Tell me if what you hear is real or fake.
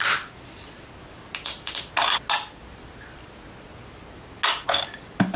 real